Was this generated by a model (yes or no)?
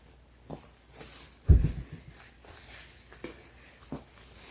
no